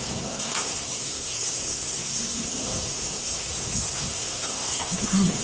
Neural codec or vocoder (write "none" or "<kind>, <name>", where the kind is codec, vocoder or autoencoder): codec, SNAC